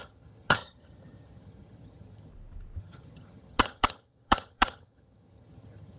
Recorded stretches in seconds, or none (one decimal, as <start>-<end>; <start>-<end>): 2.3-2.8